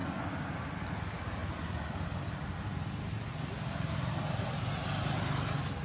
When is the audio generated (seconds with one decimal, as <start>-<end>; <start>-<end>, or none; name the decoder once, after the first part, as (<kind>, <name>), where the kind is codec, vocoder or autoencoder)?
none

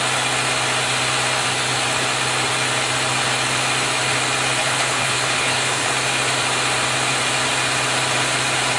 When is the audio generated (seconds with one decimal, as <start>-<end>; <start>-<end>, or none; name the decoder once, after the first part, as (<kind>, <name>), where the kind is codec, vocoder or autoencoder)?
4.6-5.9 (codec, HILCodec)

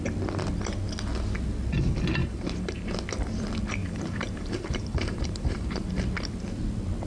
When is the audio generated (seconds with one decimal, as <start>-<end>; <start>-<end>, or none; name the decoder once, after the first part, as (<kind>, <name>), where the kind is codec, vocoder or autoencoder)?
2.2-2.9 (vocoder, BigVGAN v2); 3.8-6.0